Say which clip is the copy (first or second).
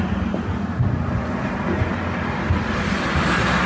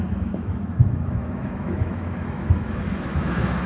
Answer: second